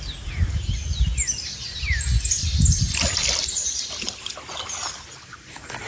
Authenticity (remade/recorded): recorded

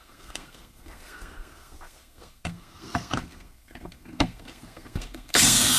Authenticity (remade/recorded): remade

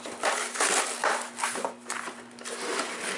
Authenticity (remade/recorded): recorded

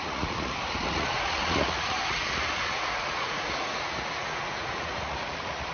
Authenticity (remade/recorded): remade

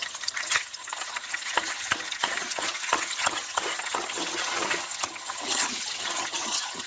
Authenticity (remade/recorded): remade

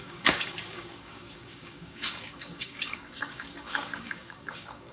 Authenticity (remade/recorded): remade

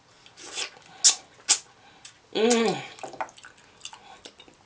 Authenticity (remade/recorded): recorded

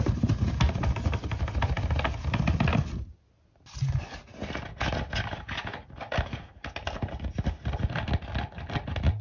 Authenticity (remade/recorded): recorded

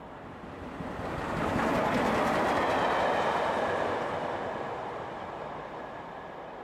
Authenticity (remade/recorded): recorded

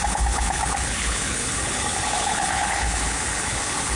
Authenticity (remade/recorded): remade